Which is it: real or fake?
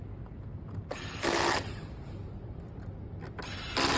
real